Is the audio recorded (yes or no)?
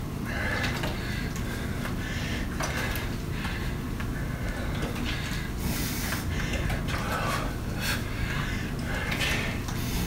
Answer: yes